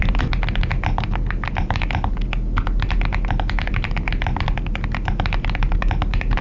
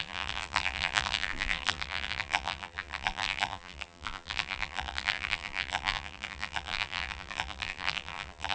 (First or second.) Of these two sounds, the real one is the first